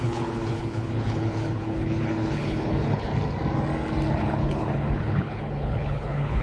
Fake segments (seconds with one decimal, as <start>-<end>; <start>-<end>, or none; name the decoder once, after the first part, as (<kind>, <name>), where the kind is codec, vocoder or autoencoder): 0.0-3.1 (codec, HILCodec); 4.1-6.4